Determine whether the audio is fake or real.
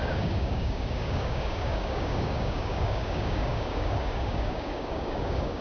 fake